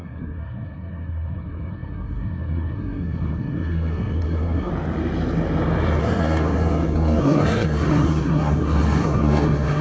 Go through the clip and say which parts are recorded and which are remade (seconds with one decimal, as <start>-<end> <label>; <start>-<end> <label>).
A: 0.0-4.7 remade; 4.7-6.0 recorded; 6.0-9.8 remade